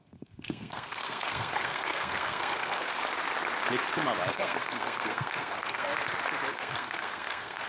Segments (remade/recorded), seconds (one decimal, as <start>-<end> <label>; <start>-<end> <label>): 0.0-2.9 remade; 2.9-4.3 recorded; 4.3-5.9 remade; 5.9-6.5 recorded; 6.5-7.7 remade